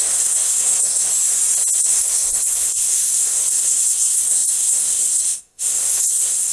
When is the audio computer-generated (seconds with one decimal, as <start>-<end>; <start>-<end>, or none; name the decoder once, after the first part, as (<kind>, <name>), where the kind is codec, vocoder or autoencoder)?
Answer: 0.0-1.1 (codec, SNAC); 1.8-6.5